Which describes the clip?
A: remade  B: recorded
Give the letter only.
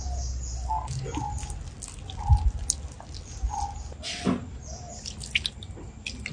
B